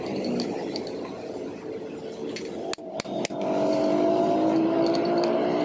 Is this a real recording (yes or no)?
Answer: yes